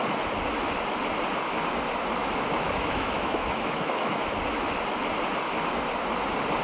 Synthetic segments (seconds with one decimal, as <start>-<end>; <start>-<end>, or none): 2.2-4.3